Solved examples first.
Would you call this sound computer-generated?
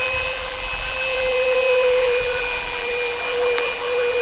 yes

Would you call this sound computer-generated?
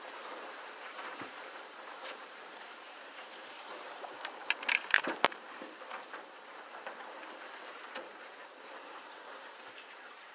yes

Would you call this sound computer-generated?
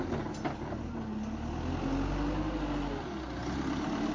no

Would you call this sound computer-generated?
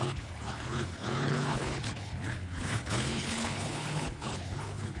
yes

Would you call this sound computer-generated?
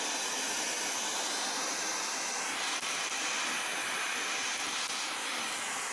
no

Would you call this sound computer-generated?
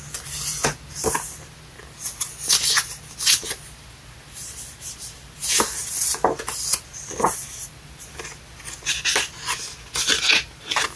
no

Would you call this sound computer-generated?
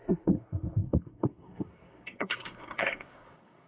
yes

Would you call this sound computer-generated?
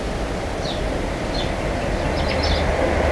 no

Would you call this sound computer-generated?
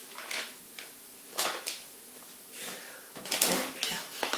yes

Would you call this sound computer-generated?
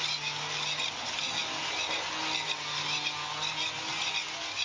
no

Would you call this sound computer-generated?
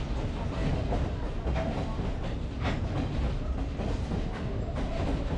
no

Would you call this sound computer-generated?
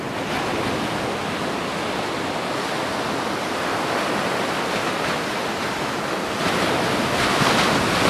no